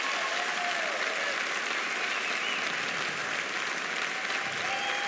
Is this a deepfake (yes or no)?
no